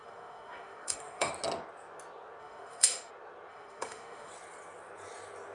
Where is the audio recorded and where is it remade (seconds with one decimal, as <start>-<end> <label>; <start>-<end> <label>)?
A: 0.0-1.3 remade; 1.3-2.4 recorded; 2.4-3.1 remade; 3.1-3.5 recorded; 3.5-4.3 remade; 4.3-5.5 recorded